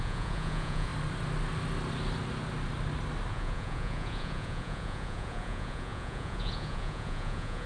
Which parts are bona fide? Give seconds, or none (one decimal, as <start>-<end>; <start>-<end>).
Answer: 0.9-3.3